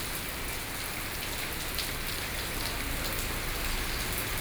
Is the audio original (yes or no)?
yes